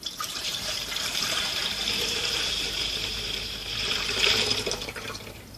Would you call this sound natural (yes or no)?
no